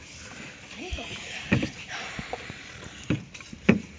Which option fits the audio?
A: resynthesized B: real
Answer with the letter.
B